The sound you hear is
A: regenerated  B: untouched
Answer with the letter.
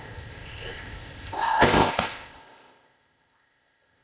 A